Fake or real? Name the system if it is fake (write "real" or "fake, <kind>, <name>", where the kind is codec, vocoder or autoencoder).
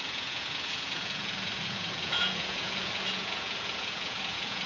fake, vocoder, Vocos